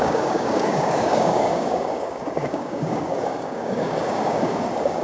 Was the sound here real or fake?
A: fake